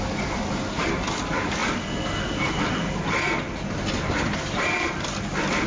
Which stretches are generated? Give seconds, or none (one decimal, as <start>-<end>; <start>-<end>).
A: none